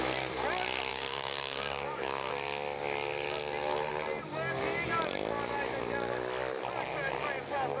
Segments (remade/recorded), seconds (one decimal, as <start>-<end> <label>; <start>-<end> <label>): 0.0-0.9 recorded; 0.9-2.3 remade; 2.3-7.8 recorded